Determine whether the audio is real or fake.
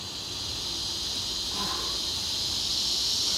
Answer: real